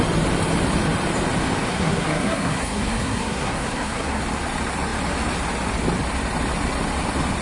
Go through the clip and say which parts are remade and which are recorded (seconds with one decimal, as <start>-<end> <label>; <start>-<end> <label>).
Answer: 0.0-1.7 recorded; 1.7-4.2 remade; 4.2-7.4 recorded